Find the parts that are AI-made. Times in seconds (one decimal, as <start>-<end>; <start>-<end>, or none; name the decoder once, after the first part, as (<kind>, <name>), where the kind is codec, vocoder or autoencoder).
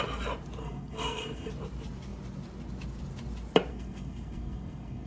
0.6-1.5 (codec, SNAC); 3.7-5.1